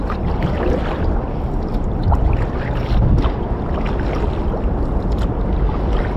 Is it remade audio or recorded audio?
recorded